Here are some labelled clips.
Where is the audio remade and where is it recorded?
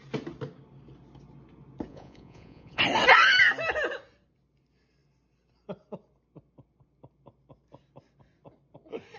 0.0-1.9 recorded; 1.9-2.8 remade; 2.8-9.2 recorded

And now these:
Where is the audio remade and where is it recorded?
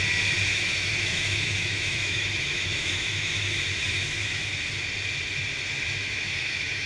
0.0-0.5 recorded; 0.5-4.4 remade; 4.4-6.0 recorded; 6.0-6.9 remade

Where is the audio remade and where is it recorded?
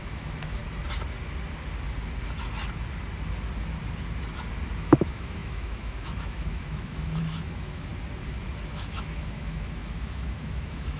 0.0-0.6 remade; 0.6-4.7 recorded; 4.7-7.9 remade; 7.9-8.7 recorded; 8.7-11.0 remade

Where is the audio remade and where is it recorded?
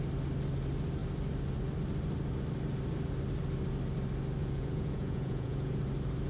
0.0-4.4 recorded; 4.4-5.8 remade; 5.8-6.3 recorded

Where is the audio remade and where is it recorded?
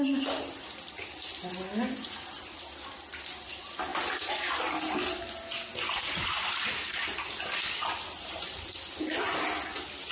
0.0-10.1 recorded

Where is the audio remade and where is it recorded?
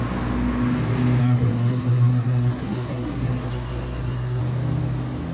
0.0-1.2 recorded; 1.2-4.4 remade; 4.4-5.3 recorded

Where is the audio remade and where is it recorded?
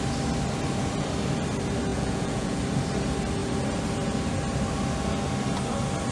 0.0-1.9 recorded; 1.9-2.6 remade; 2.6-6.1 recorded